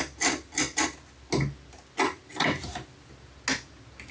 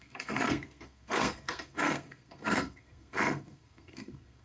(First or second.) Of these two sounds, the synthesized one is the second